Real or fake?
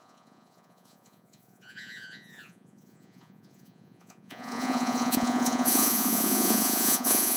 fake